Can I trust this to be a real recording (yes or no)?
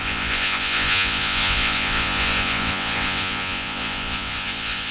no